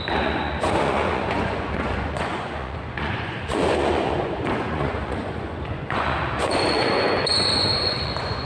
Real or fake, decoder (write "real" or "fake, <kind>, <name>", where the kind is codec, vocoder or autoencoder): fake, vocoder, Vocos